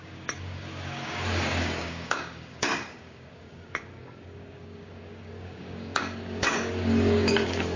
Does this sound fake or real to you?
fake